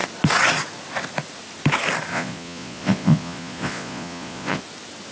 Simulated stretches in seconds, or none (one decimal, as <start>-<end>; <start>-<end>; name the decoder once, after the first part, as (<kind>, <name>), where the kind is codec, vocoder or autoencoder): 2.1-4.6 (vocoder, Vocos)